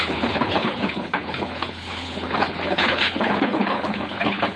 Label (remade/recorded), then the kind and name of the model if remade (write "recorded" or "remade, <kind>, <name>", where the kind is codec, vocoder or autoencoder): remade, codec, HILCodec